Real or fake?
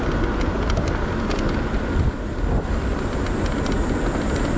real